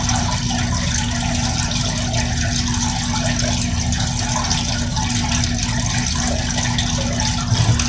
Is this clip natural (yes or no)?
yes